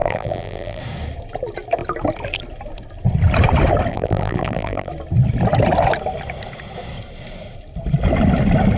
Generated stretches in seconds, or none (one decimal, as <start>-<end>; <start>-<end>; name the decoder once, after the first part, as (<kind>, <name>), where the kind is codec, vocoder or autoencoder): 0.0-0.8 (vocoder, BigVGAN v2); 3.9-4.9